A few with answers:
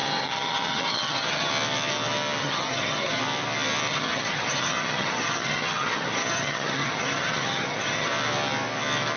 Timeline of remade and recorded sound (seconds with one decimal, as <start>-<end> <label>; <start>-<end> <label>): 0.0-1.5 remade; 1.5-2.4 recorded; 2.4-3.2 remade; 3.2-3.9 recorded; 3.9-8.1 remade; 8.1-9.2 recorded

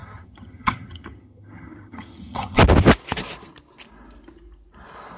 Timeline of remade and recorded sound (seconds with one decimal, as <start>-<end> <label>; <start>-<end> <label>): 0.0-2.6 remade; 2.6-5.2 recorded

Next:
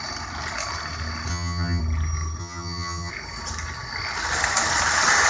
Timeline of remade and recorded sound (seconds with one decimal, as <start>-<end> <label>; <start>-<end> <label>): 0.0-1.3 recorded; 1.3-1.8 remade; 1.8-2.4 recorded; 2.4-3.1 remade; 3.1-5.3 recorded

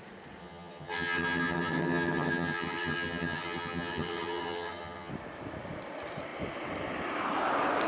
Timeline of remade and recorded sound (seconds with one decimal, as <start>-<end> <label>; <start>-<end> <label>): 0.0-0.4 recorded; 0.4-5.1 remade; 5.1-7.9 recorded

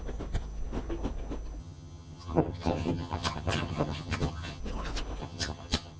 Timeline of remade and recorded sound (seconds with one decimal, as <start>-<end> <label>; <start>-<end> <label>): 0.0-1.6 recorded; 1.6-4.6 remade; 4.6-5.2 recorded; 5.2-6.0 remade

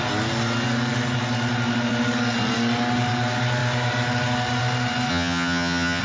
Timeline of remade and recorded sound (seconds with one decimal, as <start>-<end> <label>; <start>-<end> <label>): 0.0-5.1 recorded; 5.1-6.0 remade

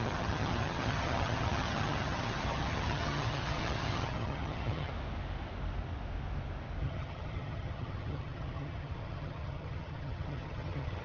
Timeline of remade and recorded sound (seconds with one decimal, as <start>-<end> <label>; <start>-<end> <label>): 0.0-4.9 remade; 4.9-6.8 recorded; 6.8-11.0 remade

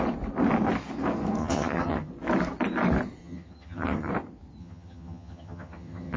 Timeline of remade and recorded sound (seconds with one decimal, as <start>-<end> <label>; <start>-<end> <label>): 0.0-1.4 recorded; 1.4-2.1 remade; 2.1-3.2 recorded; 3.2-4.1 remade; 4.1-4.6 recorded; 4.6-6.2 remade